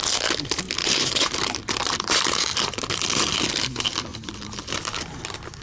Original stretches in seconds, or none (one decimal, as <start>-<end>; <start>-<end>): 0.0-0.8; 3.3-4.1; 4.7-5.6